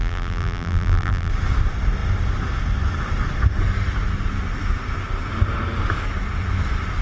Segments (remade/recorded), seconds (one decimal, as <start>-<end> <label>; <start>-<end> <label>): 0.0-1.3 remade; 1.3-7.0 recorded